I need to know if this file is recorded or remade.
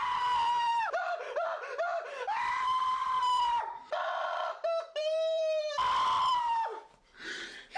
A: remade